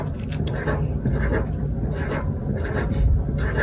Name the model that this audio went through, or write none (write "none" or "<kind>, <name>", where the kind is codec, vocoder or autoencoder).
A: none